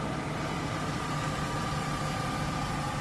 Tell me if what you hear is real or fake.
real